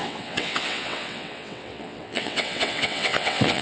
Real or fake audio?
fake